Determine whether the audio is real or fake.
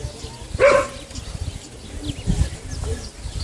real